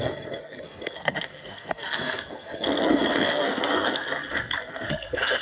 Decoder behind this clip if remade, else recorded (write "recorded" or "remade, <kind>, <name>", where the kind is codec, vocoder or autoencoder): remade, codec, SNAC